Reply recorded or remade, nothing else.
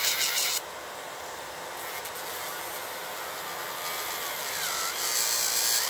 recorded